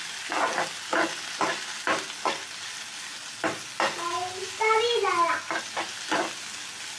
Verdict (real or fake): real